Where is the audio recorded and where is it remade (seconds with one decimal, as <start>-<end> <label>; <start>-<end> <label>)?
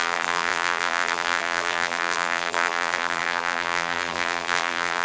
0.0-5.0 remade